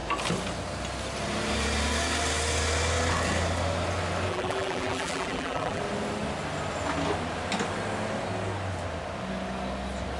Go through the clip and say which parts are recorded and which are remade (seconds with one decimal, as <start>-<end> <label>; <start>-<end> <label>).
0.0-4.3 recorded; 4.3-5.8 remade; 5.8-10.2 recorded